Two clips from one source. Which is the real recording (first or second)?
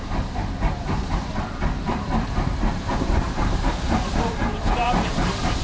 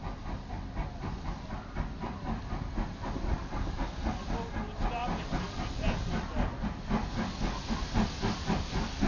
second